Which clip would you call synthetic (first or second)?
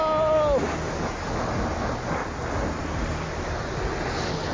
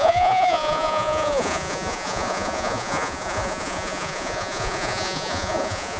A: second